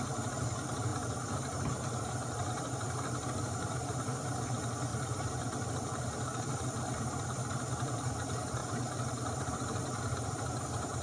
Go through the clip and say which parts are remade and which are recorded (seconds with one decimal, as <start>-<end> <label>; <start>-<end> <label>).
0.0-4.9 remade; 4.9-5.7 recorded; 5.7-11.0 remade